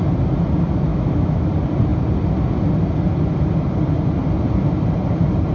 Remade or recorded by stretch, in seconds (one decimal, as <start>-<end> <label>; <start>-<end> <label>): 0.0-0.9 recorded; 0.9-1.5 remade; 1.5-5.5 recorded